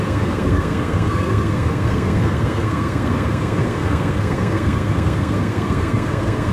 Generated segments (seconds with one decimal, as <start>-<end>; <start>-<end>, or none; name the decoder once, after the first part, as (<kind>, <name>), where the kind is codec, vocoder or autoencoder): 0.0-6.5 (codec, SNAC)